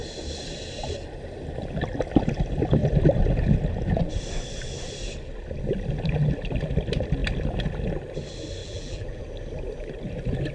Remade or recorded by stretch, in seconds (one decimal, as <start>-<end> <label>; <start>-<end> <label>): 0.0-8.6 recorded; 8.6-9.2 remade; 9.2-10.5 recorded